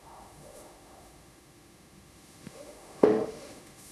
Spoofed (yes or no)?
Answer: yes